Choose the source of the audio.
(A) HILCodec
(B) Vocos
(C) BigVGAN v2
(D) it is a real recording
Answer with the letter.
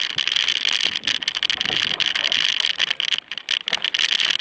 D